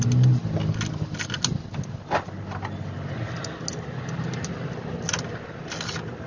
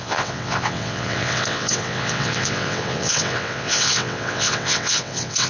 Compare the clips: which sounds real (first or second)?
first